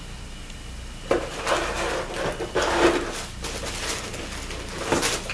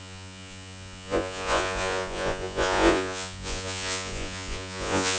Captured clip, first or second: first